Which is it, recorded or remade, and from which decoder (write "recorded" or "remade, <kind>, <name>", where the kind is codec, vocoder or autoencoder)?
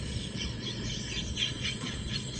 remade, vocoder, Vocos